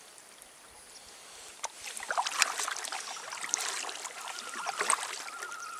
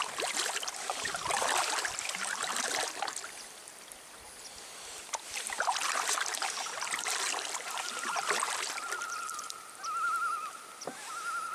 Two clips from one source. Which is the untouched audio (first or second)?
first